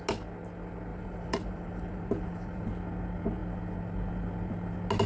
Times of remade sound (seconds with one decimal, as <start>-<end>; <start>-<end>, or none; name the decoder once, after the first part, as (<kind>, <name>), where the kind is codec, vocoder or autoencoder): 0.9-2.7 (vocoder, BigVGAN v2)